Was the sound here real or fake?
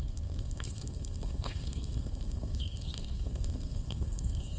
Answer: fake